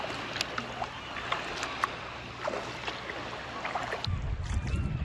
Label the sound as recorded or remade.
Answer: recorded